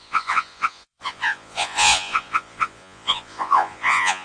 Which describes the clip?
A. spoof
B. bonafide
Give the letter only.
A